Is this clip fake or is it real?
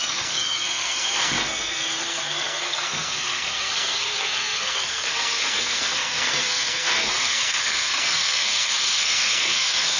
fake